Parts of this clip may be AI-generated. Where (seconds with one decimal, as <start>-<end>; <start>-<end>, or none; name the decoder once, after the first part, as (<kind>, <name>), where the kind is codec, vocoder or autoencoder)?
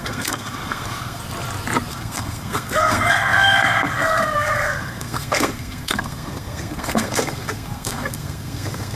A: 0.0-1.2 (codec, SNAC); 1.9-9.0